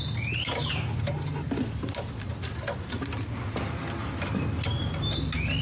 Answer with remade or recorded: recorded